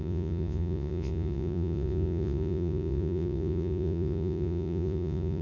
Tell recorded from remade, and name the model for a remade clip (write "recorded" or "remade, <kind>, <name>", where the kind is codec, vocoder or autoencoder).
remade, vocoder, Vocos